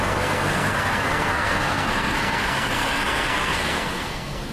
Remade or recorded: remade